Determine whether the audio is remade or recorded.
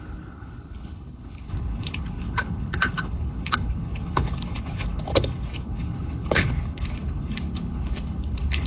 remade